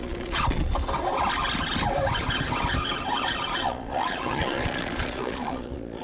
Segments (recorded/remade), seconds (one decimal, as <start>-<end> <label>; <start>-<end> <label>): 0.0-0.7 remade; 0.7-3.5 recorded; 3.5-6.0 remade